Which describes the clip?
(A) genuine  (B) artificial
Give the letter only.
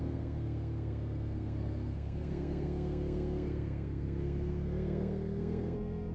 B